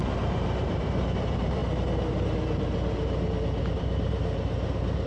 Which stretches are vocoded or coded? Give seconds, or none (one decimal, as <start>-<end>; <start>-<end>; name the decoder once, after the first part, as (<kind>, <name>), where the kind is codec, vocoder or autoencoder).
0.0-1.6 (vocoder, BigVGAN v2); 3.6-5.1